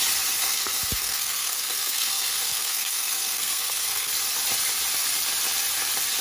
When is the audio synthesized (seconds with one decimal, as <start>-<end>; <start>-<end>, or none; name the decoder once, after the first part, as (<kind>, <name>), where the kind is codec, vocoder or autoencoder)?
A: 0.4-4.1 (codec, SNAC)